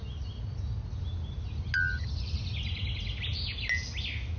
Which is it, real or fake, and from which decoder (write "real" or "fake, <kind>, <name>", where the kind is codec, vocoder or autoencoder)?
real